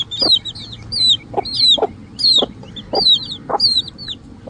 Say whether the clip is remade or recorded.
recorded